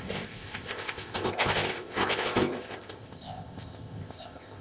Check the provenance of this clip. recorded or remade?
remade